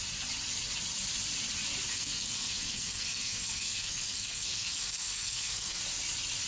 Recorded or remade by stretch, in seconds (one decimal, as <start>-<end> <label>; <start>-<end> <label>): 0.0-1.9 recorded; 1.9-5.8 remade; 5.8-6.5 recorded